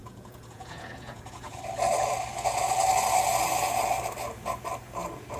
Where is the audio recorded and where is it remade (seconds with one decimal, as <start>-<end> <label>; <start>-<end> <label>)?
0.0-1.6 remade; 1.6-5.4 recorded